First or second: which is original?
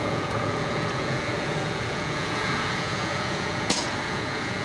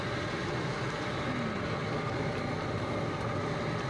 second